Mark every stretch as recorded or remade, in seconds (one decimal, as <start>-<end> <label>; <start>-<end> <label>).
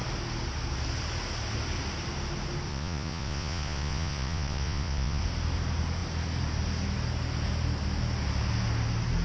0.0-2.7 recorded; 2.7-5.2 remade; 5.2-9.2 recorded